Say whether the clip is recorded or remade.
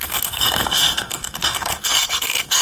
remade